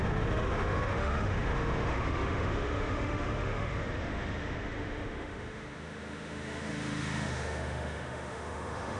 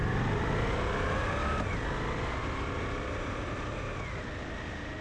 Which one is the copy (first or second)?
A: first